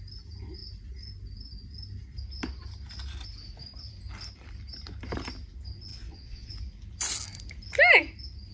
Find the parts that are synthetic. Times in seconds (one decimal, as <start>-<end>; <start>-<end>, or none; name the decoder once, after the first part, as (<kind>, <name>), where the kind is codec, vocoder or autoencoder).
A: 5.9-6.5 (vocoder, Vocos)